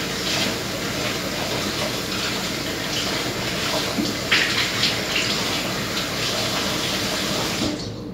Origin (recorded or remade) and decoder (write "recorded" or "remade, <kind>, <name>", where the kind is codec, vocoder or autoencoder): recorded